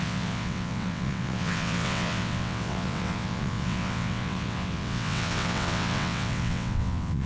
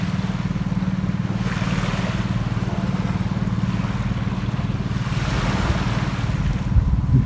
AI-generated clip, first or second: first